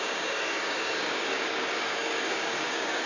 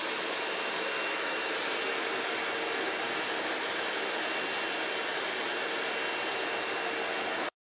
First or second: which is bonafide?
second